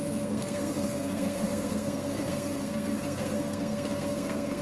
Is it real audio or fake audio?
fake